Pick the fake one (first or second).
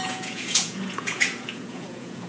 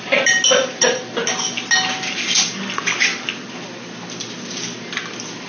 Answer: first